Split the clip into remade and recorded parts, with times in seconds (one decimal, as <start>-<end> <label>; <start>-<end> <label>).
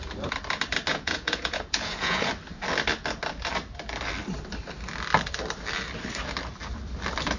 0.0-0.9 recorded; 0.9-2.3 remade; 2.3-7.4 recorded